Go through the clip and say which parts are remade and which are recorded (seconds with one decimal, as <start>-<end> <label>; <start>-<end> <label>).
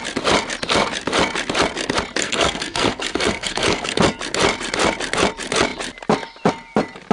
0.0-2.2 recorded; 2.2-4.0 remade; 4.0-7.1 recorded